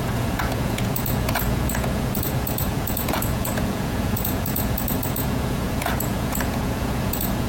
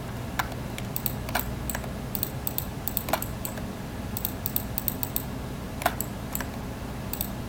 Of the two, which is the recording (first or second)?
second